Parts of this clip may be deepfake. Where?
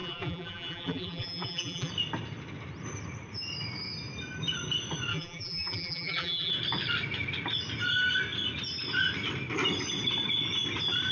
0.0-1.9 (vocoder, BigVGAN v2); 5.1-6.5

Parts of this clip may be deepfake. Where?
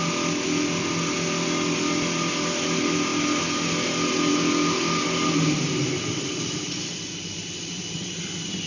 none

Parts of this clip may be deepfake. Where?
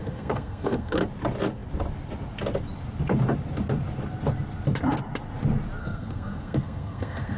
0.0-1.0 (codec, SNAC); 5.8-7.4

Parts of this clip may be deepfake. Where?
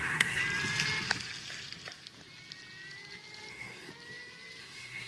0.0-0.4 (codec, SNAC); 3.5-3.9; 4.6-5.1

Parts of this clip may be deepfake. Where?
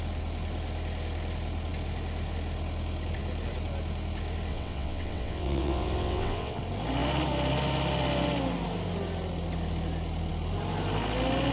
4.5-6.6 (vocoder, WaveNeXt)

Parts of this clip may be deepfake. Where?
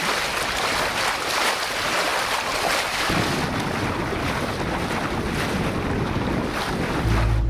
none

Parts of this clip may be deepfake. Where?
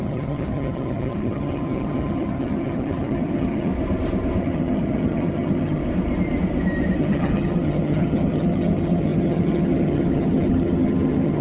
0.0-3.7 (vocoder, HiFi-GAN); 4.4-5.8; 7.0-11.4